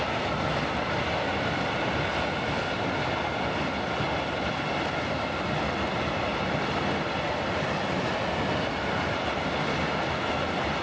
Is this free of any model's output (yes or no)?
yes